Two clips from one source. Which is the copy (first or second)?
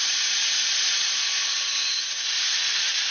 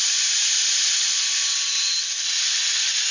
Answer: first